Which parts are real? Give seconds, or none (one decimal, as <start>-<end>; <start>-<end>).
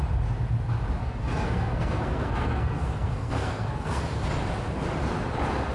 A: 0.0-1.0; 4.0-5.7